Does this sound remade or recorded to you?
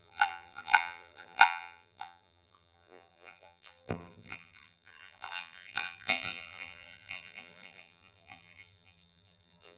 remade